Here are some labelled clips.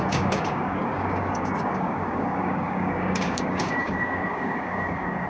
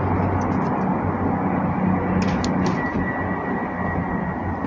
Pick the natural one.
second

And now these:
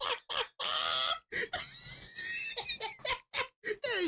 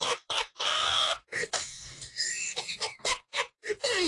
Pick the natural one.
first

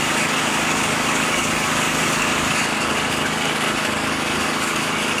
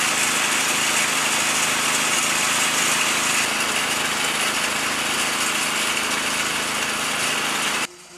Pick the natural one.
second